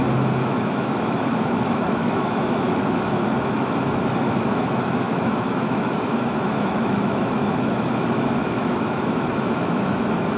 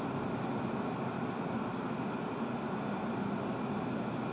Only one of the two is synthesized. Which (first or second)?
first